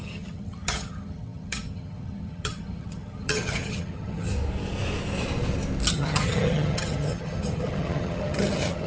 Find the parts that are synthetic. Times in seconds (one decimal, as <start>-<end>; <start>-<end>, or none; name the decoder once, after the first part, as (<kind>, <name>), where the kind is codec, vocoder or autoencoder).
0.0-4.3 (vocoder, HiFi-GAN); 5.9-8.9